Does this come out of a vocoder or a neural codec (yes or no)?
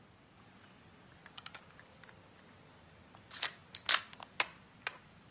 no